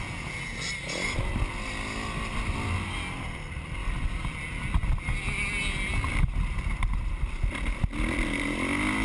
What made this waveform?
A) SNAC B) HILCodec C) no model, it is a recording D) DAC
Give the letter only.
C